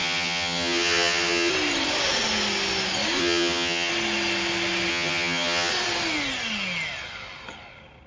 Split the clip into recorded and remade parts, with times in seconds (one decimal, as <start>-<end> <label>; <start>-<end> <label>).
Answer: 0.0-1.5 remade; 1.5-3.2 recorded; 3.2-3.9 remade; 3.9-4.9 recorded; 4.9-5.7 remade; 5.7-8.1 recorded